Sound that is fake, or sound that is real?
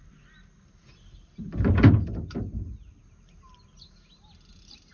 real